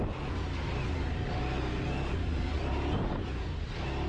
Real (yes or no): yes